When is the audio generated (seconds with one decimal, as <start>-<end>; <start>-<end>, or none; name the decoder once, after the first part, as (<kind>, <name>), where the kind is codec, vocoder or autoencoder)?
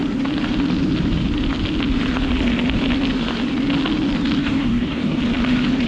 4.4-5.2 (codec, DAC)